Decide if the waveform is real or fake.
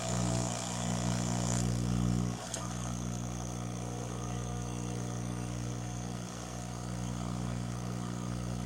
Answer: fake